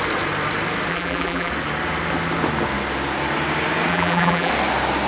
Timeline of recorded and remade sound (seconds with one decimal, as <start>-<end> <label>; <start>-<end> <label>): 0.0-0.9 recorded; 0.9-1.5 remade; 1.5-3.9 recorded; 3.9-4.5 remade; 4.5-5.1 recorded